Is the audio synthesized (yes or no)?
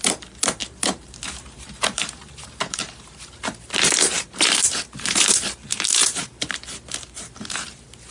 yes